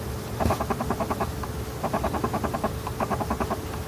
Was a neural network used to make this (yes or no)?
no